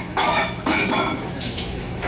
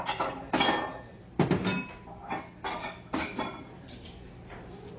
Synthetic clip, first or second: first